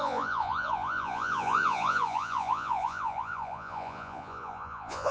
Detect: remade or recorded remade